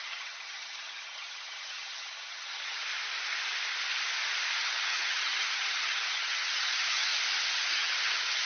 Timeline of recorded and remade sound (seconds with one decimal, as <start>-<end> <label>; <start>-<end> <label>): 0.0-2.8 remade; 2.8-4.6 recorded; 4.6-7.1 remade; 7.1-7.7 recorded; 7.7-8.5 remade